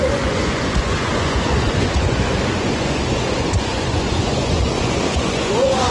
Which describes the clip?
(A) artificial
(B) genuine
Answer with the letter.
A